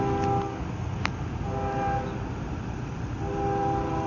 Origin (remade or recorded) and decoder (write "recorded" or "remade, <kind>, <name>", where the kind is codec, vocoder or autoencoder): recorded